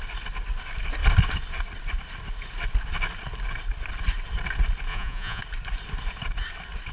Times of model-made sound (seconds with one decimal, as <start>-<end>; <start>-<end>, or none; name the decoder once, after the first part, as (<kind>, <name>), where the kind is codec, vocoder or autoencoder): 4.9-5.4 (vocoder, Vocos)